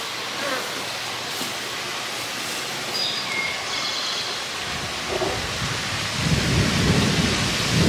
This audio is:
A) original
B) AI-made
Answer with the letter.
A